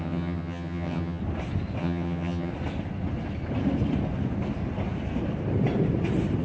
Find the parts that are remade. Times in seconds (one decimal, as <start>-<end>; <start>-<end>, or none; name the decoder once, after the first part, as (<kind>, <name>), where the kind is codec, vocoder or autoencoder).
0.0-1.2 (vocoder, HiFi-GAN); 1.8-2.5